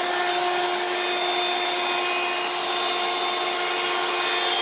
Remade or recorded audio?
recorded